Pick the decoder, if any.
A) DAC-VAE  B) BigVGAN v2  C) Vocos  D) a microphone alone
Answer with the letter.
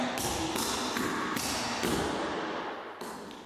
D